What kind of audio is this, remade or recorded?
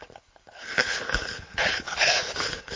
remade